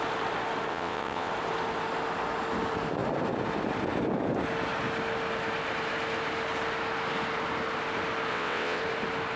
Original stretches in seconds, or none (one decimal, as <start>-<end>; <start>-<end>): 0.0-0.7; 1.3-8.3; 8.8-9.4